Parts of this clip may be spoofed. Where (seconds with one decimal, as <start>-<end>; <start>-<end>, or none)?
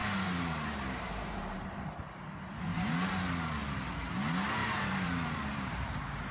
0.0-2.1; 2.7-3.5; 4.6-6.3